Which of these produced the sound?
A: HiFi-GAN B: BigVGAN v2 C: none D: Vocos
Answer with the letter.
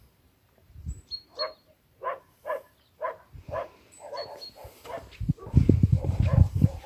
B